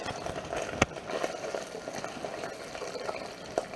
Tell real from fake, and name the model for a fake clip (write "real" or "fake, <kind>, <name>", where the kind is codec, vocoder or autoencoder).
real